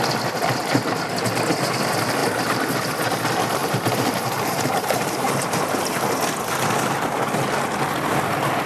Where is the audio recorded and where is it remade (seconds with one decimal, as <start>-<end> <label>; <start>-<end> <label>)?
0.0-3.6 recorded; 3.6-5.3 remade; 5.3-8.7 recorded